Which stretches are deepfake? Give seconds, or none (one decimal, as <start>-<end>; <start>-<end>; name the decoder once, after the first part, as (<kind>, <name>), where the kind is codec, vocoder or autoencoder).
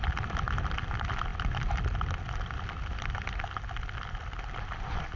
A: none